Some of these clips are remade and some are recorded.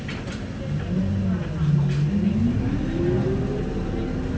recorded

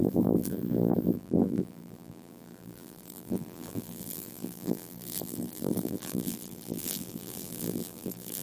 remade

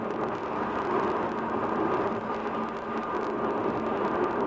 recorded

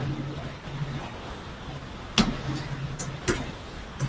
recorded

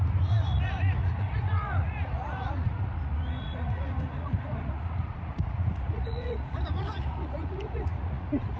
remade